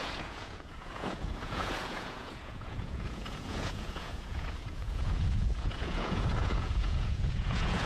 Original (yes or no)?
no